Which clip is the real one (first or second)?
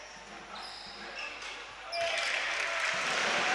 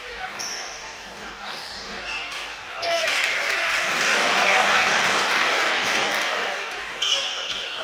first